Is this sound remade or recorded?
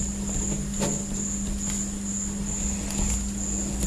recorded